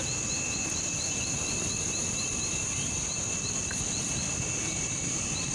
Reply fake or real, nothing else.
real